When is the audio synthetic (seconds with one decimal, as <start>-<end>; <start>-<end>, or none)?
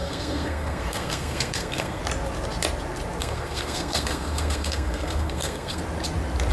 0.0-2.0; 3.2-5.8